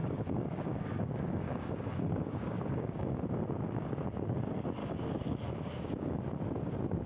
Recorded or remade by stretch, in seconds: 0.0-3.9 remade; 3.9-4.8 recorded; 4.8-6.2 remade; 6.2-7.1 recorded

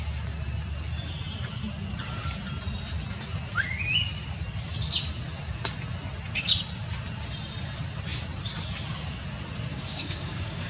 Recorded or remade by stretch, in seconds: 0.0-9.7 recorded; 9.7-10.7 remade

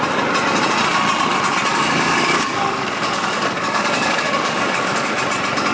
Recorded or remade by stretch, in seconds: 0.0-1.7 recorded; 1.7-5.1 remade; 5.1-5.7 recorded

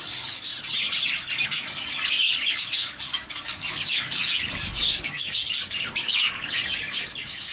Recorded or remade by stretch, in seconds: 0.0-0.5 remade; 0.5-1.3 recorded; 1.3-7.5 remade